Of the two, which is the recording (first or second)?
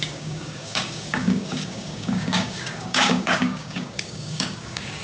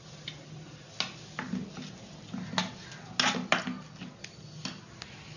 second